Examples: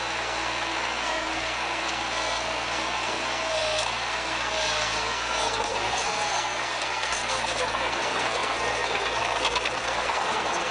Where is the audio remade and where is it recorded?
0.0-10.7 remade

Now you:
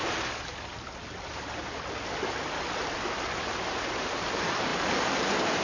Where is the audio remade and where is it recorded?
0.0-5.6 recorded

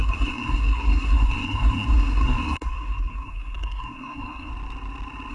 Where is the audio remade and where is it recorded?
0.0-4.5 remade; 4.5-5.3 recorded